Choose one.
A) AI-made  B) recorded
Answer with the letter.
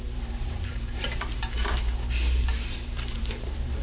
A